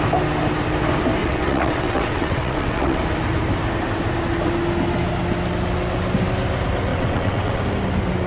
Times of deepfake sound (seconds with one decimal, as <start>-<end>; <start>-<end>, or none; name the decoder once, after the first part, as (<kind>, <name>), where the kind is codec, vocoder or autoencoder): 1.2-3.0 (vocoder, WaveNeXt); 6.9-7.6

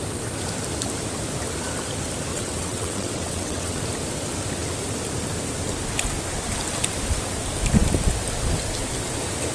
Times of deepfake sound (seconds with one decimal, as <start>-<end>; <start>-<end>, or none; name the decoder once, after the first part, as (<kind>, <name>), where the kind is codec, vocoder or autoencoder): 2.3-3.8 (vocoder, WaveNeXt)

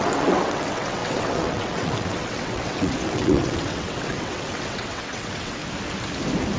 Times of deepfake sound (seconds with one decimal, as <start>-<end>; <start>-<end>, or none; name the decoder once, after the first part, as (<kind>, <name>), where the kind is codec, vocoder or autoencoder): 0.0-5.6 (vocoder, WaveNeXt)